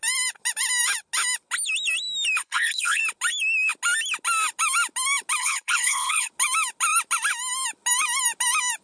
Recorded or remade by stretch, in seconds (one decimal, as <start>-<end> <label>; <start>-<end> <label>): 0.0-2.4 recorded; 2.4-3.0 remade; 3.0-5.4 recorded; 5.4-6.3 remade; 6.3-8.8 recorded